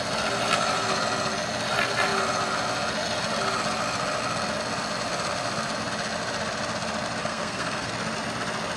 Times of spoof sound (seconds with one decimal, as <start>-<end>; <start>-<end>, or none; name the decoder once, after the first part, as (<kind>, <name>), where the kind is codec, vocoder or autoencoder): 7.2-7.9 (codec, SNAC)